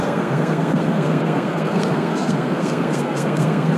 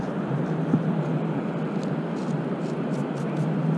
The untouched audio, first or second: second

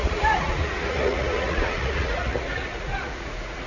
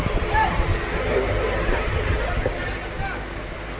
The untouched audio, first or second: second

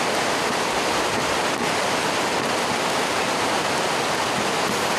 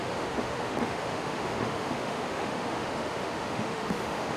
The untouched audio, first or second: first